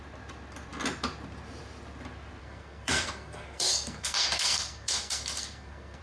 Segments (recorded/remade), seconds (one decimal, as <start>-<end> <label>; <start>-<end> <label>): 0.0-2.4 recorded; 2.4-6.0 remade